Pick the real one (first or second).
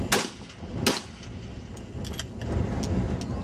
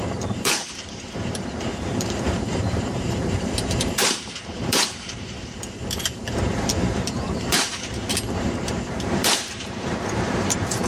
first